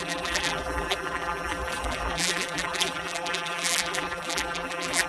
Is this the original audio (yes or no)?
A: no